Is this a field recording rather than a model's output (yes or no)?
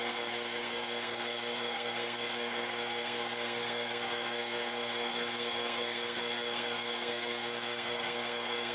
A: no